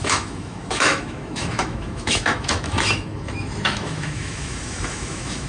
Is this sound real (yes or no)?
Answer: no